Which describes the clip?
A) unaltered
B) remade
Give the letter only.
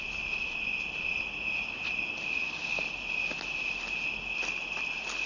A